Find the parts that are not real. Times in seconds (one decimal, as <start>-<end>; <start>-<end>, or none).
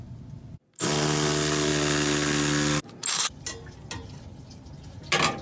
none